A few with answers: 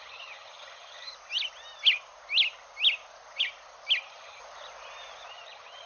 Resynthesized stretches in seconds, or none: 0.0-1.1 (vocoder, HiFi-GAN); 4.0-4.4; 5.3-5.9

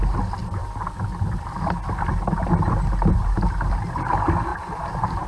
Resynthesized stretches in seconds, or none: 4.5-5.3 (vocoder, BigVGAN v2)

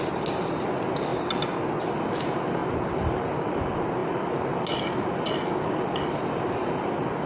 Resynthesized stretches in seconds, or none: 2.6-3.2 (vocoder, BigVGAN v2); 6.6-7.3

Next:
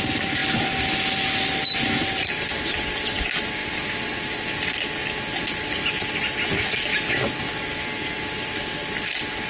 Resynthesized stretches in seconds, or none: 0.0-0.4 (vocoder, BigVGAN v2); 1.7-3.6; 6.1-6.9; 8.3-9.5

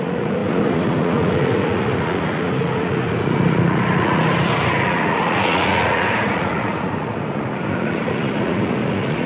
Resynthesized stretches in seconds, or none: 0.0-9.3 (vocoder, Vocos)

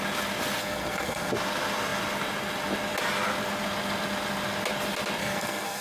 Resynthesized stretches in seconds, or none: 0.6-1.3 (codec, SNAC); 5.2-5.8